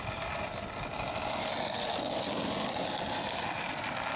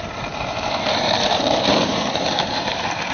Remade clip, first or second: second